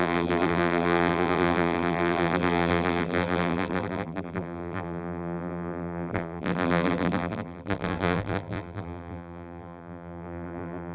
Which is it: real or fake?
fake